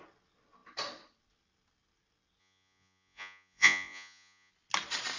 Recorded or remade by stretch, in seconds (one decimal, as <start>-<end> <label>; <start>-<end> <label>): 0.0-2.4 recorded; 2.4-4.5 remade; 4.5-5.2 recorded